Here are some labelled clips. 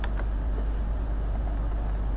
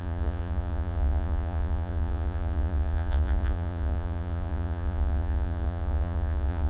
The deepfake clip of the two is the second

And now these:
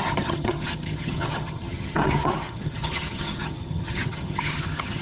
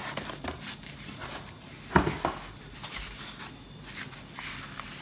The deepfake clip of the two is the first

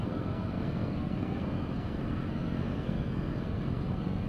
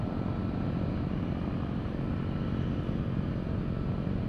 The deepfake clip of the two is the first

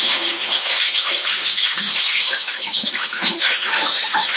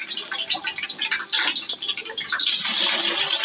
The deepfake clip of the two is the first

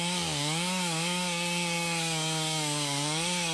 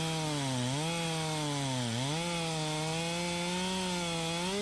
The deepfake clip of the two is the first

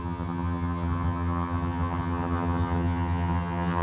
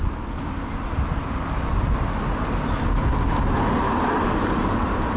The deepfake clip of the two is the first